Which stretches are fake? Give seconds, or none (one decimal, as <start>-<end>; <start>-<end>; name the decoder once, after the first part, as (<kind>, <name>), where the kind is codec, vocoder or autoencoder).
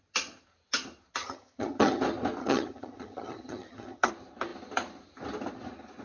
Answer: 1.2-2.0 (vocoder, HiFi-GAN); 2.4-4.1